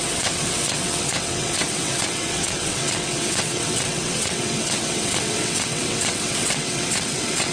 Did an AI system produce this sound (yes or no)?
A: yes